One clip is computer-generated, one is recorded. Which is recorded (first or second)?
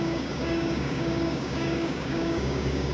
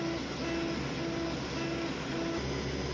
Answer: second